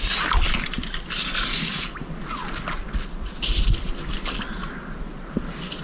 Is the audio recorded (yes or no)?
yes